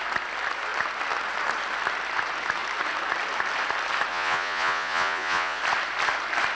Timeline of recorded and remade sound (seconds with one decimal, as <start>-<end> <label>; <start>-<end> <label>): 0.0-4.1 recorded; 4.1-5.6 remade; 5.6-6.5 recorded